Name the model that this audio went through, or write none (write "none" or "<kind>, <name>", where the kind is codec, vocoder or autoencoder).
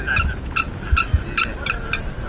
none